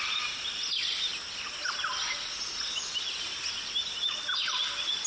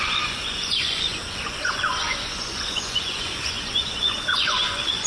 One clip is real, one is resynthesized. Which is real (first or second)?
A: first